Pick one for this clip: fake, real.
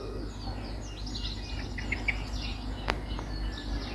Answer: real